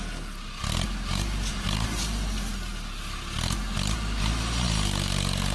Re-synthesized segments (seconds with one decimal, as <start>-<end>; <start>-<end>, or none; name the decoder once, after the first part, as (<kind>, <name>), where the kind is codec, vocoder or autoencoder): 1.5-2.0 (vocoder, BigVGAN v2)